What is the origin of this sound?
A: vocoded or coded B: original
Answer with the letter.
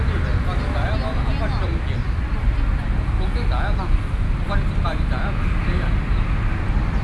B